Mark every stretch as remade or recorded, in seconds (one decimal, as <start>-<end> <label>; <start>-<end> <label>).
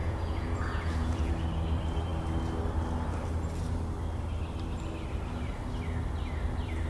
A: 0.0-1.3 remade; 1.3-6.9 recorded